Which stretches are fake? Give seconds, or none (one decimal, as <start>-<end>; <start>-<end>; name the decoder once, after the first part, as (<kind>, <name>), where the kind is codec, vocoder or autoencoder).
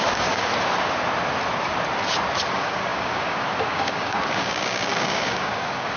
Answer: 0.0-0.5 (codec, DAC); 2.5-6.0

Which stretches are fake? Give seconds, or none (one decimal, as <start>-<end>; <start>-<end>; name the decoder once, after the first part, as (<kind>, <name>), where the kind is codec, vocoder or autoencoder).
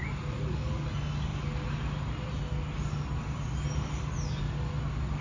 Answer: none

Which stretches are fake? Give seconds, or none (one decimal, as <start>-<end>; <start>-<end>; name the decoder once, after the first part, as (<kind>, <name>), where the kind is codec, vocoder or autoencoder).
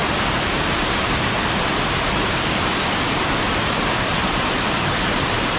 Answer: none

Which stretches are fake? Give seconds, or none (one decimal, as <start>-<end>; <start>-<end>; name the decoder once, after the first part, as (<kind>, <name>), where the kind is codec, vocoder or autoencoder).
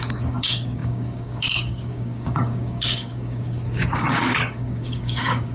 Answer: 0.0-5.5 (codec, DAC)